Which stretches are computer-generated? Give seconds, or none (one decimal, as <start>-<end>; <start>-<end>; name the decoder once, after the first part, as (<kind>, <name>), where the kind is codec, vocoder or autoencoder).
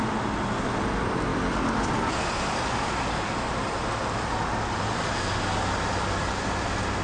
none